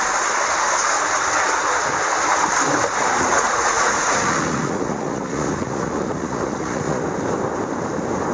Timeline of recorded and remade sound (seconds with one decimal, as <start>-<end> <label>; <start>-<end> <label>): 0.0-3.1 recorded; 3.1-7.0 remade; 7.0-8.3 recorded